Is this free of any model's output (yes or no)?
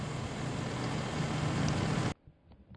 yes